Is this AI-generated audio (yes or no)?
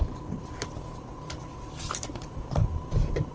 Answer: yes